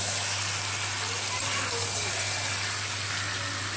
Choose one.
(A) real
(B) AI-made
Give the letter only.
A